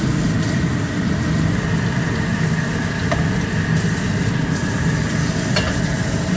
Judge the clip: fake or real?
real